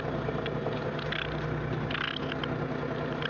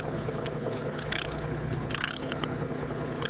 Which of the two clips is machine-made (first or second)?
second